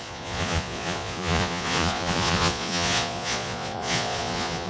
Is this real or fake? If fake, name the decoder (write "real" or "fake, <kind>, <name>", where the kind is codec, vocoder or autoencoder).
fake, vocoder, Vocos